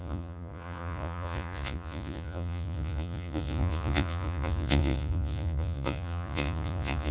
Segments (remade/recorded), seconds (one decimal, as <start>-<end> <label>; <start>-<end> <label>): 0.0-7.1 remade